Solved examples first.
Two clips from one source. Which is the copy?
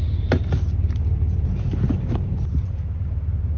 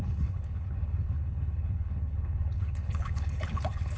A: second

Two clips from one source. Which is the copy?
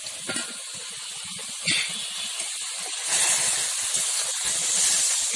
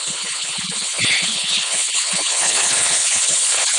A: second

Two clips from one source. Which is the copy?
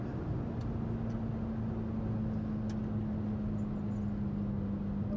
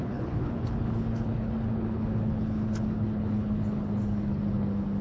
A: second